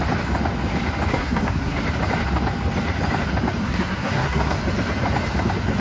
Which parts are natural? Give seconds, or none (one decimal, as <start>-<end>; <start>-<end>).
0.0-1.1; 1.8-3.6; 4.6-5.8